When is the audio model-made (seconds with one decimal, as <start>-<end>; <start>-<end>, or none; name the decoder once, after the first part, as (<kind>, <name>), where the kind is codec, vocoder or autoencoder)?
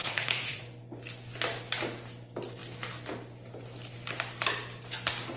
0.0-0.6 (vocoder, Vocos)